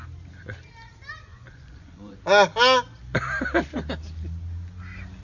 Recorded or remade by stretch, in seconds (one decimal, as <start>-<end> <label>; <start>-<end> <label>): 0.0-1.3 recorded; 1.3-2.2 remade; 2.2-5.2 recorded